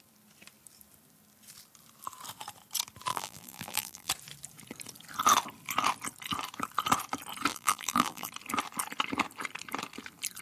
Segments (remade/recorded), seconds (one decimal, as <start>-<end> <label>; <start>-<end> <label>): 0.0-3.1 recorded; 3.1-4.1 remade; 4.1-7.5 recorded; 7.5-8.3 remade; 8.3-10.4 recorded